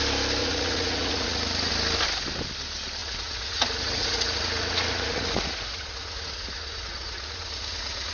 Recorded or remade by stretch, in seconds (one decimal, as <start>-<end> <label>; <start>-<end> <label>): 0.0-0.4 recorded; 0.4-1.7 remade; 1.7-3.0 recorded; 3.0-8.1 remade